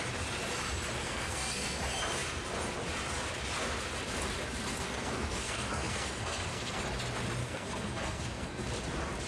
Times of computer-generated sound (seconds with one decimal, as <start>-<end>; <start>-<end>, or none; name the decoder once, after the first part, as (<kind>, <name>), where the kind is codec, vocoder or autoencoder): 1.0-1.8 (codec, SNAC); 4.7-6.8; 7.4-8.6